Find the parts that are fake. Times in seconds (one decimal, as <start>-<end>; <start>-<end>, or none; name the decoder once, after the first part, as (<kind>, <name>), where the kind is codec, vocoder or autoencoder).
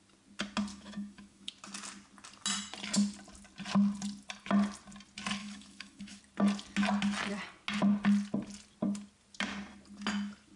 0.7-1.5 (autoencoder, DAC-VAE); 5.4-6.2